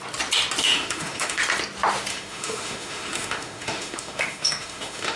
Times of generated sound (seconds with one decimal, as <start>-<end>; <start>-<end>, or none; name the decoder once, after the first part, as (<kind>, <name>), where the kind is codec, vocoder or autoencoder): 0.6-1.4 (autoencoder, DAC-VAE); 2.1-5.2